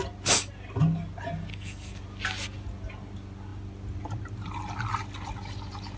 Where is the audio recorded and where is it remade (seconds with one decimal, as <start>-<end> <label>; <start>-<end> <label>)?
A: 0.0-1.5 recorded; 1.5-2.0 remade; 2.0-6.0 recorded